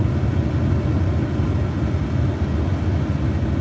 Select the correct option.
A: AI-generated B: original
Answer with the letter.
B